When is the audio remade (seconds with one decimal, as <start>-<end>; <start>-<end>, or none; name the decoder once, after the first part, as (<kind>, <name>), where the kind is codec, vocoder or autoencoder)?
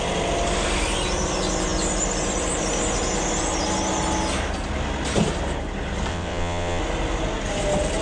6.1-6.8 (vocoder, WaveNeXt)